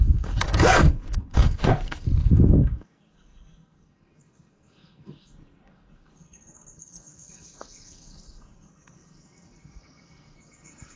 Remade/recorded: remade